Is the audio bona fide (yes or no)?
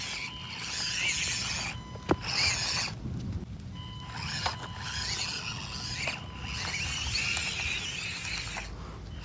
yes